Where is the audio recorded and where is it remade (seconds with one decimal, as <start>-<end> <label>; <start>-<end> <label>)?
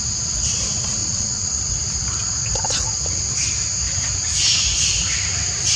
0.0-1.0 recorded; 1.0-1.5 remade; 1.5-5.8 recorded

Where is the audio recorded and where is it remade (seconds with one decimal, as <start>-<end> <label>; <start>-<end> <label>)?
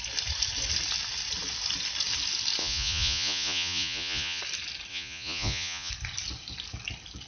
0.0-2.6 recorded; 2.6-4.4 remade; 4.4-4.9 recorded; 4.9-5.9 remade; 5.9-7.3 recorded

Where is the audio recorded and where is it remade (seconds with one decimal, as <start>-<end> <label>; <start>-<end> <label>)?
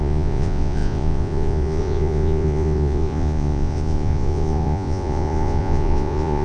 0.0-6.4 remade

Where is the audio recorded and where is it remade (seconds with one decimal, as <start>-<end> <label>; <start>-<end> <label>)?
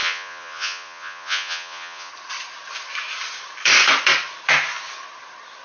0.0-2.1 remade; 2.1-5.6 recorded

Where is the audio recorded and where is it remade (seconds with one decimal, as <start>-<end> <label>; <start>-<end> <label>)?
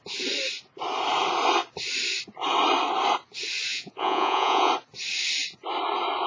0.0-3.7 recorded; 3.7-4.7 remade; 4.7-6.3 recorded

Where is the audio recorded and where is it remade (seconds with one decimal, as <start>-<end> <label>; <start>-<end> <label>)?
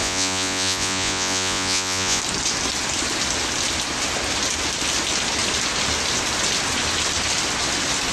0.0-2.2 remade; 2.2-8.1 recorded